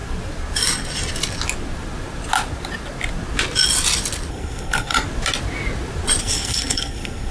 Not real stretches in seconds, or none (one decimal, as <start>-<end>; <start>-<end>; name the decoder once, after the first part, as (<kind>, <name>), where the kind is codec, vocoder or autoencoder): 4.3-4.9 (codec, SNAC); 6.2-7.3